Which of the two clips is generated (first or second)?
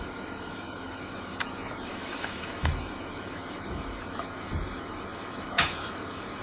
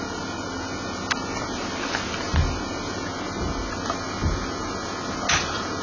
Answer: first